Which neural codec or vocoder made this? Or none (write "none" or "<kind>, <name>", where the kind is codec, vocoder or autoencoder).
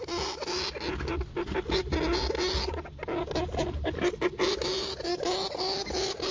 none